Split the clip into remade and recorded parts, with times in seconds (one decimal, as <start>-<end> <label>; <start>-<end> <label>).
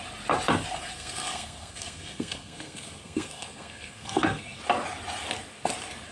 0.0-0.9 recorded; 0.9-4.6 remade; 4.6-6.1 recorded